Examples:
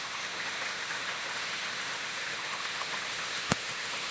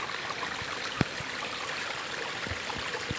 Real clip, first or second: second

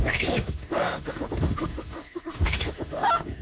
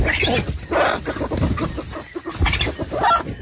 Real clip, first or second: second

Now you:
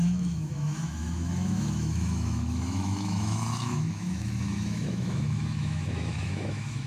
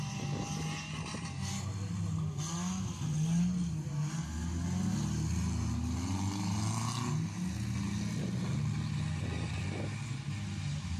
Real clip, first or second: second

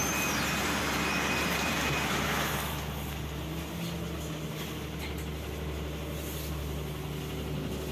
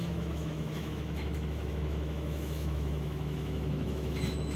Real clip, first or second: first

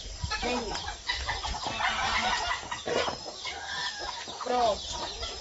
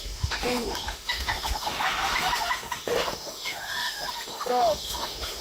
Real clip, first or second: first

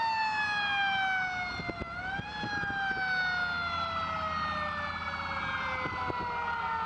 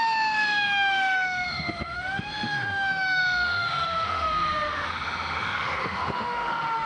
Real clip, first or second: first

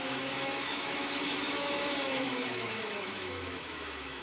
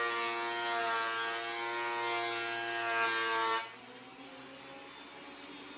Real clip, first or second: second